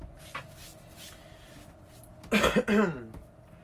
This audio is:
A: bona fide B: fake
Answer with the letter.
A